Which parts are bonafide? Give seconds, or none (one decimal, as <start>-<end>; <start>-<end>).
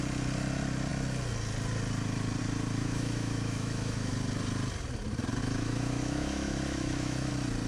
0.0-2.8; 4.1-5.4; 7.3-7.7